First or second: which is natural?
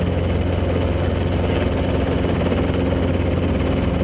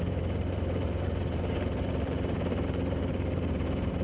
first